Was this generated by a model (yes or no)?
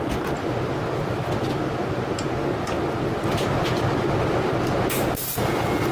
no